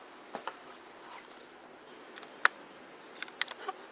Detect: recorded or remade recorded